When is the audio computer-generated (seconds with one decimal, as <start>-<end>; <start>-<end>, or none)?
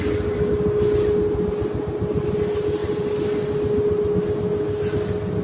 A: none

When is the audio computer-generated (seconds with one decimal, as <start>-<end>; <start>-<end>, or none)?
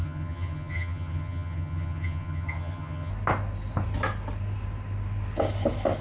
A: 0.0-3.1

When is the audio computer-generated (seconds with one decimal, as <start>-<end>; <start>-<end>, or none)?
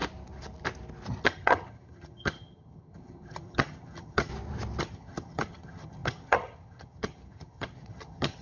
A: 1.2-4.3; 4.8-8.4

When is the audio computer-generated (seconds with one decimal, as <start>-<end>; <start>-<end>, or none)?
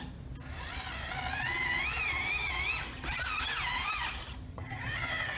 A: 4.5-5.4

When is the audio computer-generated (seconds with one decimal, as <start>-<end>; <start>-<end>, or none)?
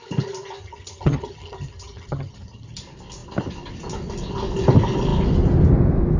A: 0.6-2.8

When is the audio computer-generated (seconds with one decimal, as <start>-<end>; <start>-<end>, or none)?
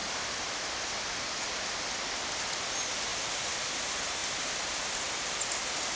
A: none